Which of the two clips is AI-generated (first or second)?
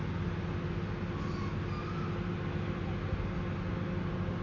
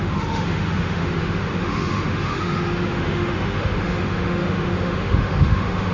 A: second